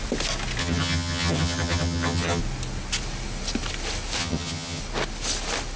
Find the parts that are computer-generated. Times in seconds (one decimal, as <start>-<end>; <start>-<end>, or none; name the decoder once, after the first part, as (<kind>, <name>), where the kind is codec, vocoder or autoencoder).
0.6-2.4 (vocoder, HiFi-GAN); 4.2-4.8